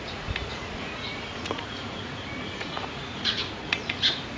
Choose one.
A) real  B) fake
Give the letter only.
B